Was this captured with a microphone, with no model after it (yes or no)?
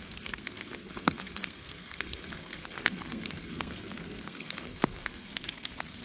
no